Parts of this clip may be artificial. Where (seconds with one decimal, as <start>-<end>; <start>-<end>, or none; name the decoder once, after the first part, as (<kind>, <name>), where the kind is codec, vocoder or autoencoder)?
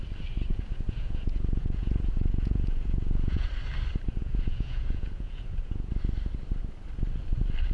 0.5-3.5 (vocoder, Vocos); 4.2-5.9